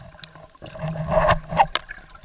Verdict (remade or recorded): recorded